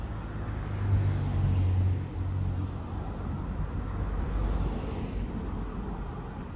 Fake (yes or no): no